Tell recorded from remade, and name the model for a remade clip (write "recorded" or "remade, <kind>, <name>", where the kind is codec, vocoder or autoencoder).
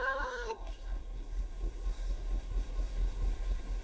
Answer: remade, codec, SNAC